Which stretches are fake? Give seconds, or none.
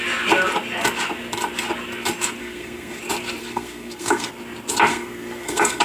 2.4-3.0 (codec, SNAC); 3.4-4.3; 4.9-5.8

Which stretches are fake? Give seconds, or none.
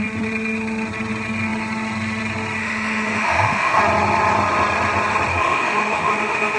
2.6-3.8 (autoencoder, DAC-VAE); 5.3-6.6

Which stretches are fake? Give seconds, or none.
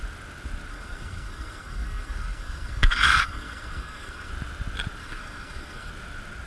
0.7-4.3 (codec, SNAC); 5.0-5.9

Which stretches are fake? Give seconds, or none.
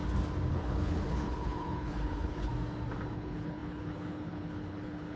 0.5-2.5 (codec, HILCodec); 3.1-5.2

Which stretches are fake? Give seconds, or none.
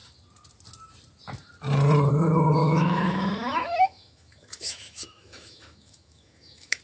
2.6-6.8 (autoencoder, DAC-VAE)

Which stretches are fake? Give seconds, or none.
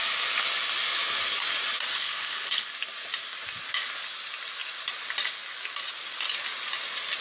1.9-2.7 (codec, HILCodec)